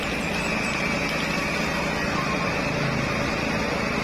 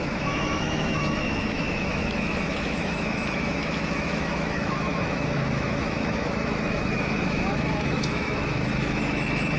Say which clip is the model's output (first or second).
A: second